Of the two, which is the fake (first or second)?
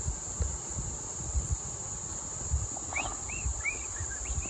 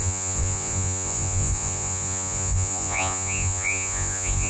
second